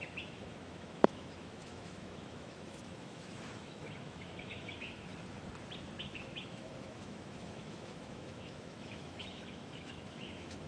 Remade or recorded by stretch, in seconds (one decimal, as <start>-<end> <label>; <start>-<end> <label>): 0.0-5.1 remade; 5.1-6.0 recorded; 6.0-10.7 remade